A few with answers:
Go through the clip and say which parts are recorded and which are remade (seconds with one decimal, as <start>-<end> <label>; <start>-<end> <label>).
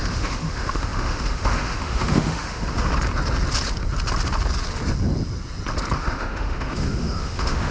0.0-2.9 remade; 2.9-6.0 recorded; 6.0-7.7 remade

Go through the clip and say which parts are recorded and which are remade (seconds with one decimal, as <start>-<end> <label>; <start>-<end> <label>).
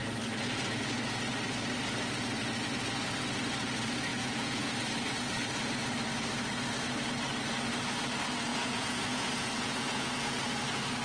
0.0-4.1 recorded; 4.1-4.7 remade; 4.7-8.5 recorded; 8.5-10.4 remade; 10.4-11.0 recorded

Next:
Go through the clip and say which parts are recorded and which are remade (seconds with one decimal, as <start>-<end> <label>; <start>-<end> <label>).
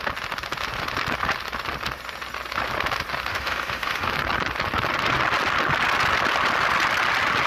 0.0-3.3 recorded; 3.3-4.1 remade; 4.1-7.5 recorded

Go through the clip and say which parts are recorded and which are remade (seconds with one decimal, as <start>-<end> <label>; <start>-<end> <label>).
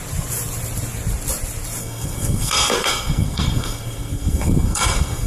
0.0-1.8 recorded; 1.8-5.3 remade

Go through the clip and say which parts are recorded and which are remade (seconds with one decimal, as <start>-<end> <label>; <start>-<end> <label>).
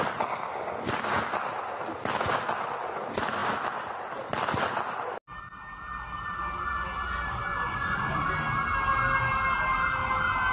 0.0-7.5 recorded; 7.5-8.3 remade; 8.3-10.5 recorded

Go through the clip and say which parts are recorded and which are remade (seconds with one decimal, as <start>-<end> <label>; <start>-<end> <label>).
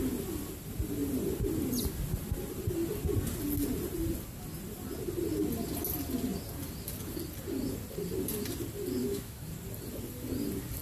0.0-9.0 recorded; 9.0-9.5 remade; 9.5-10.8 recorded